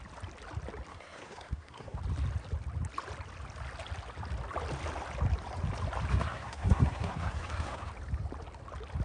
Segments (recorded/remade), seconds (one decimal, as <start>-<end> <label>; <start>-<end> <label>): 0.0-0.9 recorded; 0.9-2.0 remade; 2.0-6.1 recorded; 6.1-7.9 remade; 7.9-9.0 recorded

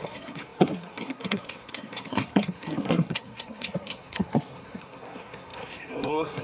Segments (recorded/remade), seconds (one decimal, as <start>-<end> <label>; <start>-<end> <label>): 0.0-6.4 remade

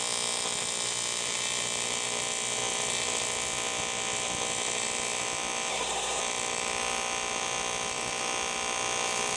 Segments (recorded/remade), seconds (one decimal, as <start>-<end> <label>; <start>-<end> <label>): 0.0-5.7 recorded; 5.7-6.2 remade; 6.2-9.4 recorded